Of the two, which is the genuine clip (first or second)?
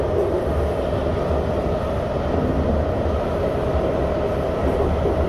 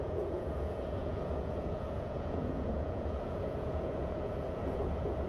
first